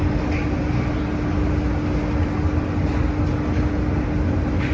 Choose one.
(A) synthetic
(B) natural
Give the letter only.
B